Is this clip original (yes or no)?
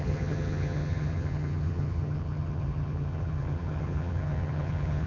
no